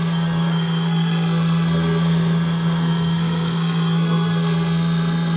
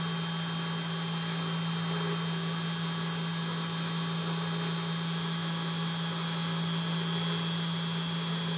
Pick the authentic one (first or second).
second